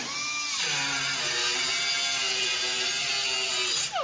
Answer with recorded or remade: recorded